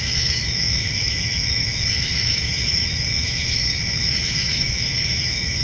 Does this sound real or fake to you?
fake